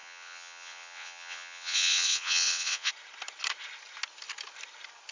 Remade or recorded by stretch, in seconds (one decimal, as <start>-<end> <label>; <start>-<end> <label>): 0.0-2.9 remade; 2.9-5.1 recorded